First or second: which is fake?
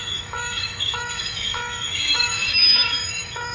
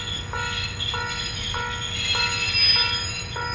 first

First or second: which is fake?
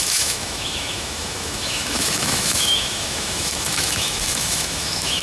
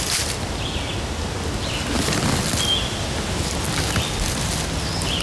first